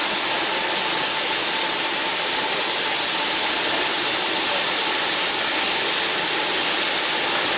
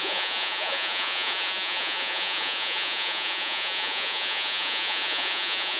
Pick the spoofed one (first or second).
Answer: second